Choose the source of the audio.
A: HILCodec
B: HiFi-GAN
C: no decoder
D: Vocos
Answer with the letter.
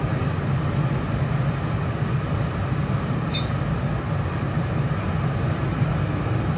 C